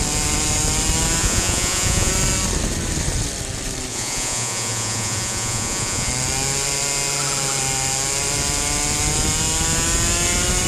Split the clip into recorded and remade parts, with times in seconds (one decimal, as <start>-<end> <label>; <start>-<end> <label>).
0.0-1.2 recorded; 1.2-2.1 remade; 2.1-3.9 recorded; 3.9-6.1 remade; 6.1-10.7 recorded